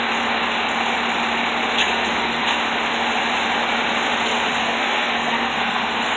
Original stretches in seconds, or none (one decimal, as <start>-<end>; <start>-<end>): 0.0-1.8; 2.6-4.6